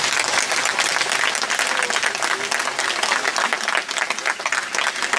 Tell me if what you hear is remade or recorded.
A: recorded